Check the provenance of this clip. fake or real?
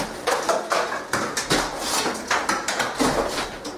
real